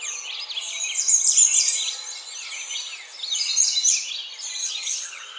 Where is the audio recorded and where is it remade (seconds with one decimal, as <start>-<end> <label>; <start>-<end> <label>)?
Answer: 0.0-4.6 recorded; 4.6-5.4 remade